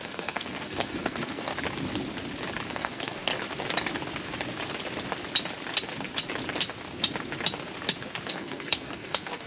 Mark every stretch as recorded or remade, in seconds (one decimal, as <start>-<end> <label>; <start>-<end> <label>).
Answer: 0.0-1.5 remade; 1.5-2.7 recorded; 2.7-3.3 remade; 3.3-8.3 recorded; 8.3-9.5 remade